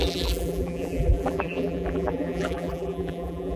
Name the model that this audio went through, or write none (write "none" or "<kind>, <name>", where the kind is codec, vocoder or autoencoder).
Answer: vocoder, BigVGAN v2